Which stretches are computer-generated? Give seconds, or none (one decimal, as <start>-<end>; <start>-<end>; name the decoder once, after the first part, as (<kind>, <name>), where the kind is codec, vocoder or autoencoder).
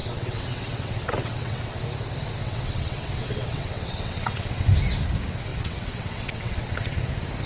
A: 0.0-1.8 (vocoder, WaveNeXt); 2.4-4.6; 5.5-7.1